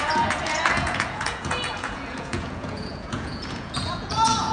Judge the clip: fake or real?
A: fake